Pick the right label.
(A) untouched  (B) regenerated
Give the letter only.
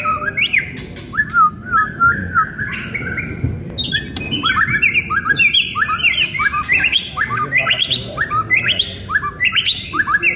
A